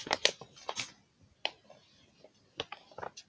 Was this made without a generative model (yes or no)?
yes